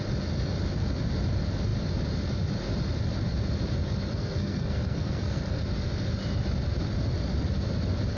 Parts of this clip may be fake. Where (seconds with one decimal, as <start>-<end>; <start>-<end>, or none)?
4.1-5.6